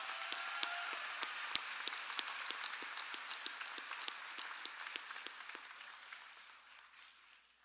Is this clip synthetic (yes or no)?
no